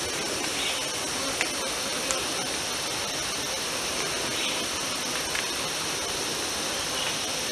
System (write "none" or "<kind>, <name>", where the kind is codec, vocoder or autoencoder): none